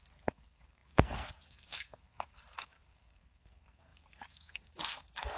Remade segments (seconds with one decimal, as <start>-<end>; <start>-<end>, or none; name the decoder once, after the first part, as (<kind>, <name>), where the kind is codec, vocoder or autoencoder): 0.0-5.4 (codec, SNAC)